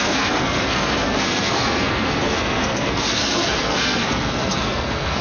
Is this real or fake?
fake